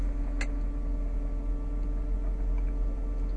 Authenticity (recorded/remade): recorded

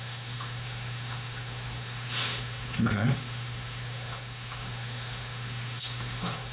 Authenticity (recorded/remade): remade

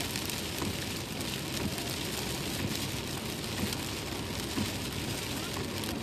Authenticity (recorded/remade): recorded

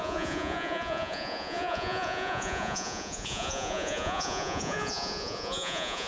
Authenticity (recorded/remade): remade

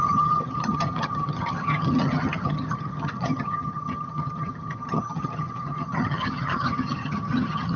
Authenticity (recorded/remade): remade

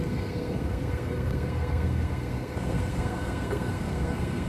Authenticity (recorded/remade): remade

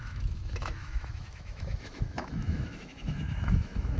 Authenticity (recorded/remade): remade